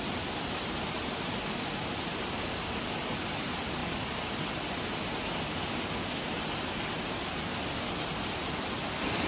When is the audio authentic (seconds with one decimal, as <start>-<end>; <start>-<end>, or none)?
0.0-9.3